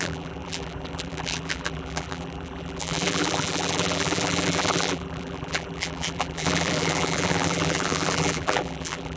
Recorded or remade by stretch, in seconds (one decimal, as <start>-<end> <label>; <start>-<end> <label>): 0.0-9.2 remade

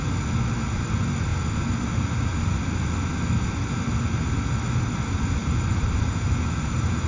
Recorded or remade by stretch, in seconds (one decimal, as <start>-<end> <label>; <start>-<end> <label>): 0.0-5.4 recorded; 5.4-7.1 remade

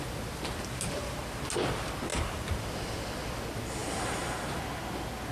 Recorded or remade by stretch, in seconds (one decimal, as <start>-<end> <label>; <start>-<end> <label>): 0.0-2.1 recorded; 2.1-2.7 remade; 2.7-5.3 recorded

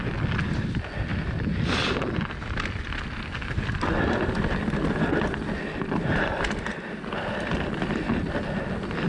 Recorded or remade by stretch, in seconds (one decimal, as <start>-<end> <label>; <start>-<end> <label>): 0.0-1.1 recorded; 1.1-2.2 remade; 2.2-9.1 recorded

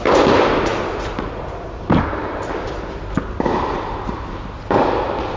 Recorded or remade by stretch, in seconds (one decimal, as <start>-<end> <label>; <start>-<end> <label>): 0.0-5.4 remade